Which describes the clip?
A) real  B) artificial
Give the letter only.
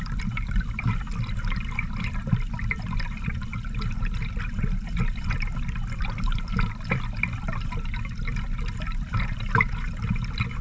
B